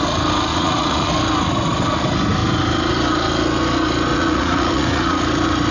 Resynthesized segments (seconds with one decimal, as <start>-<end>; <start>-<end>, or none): 0.5-1.1; 4.1-5.2